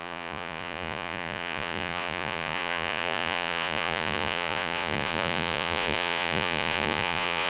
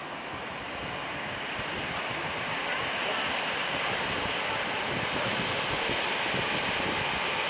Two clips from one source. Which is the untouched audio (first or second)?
second